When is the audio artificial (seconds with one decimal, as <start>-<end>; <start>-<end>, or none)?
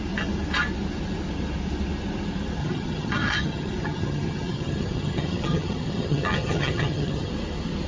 2.6-7.3